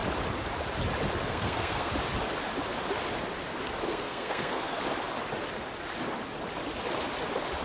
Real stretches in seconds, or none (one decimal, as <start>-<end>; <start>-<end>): 0.0-1.3; 1.9-3.9; 4.8-7.6